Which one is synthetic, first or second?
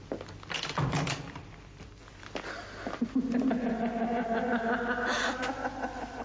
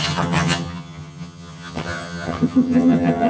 second